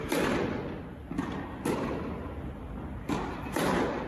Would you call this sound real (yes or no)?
yes